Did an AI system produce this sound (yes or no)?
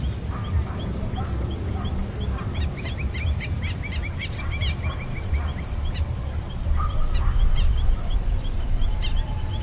no